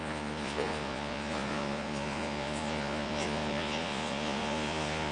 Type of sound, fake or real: fake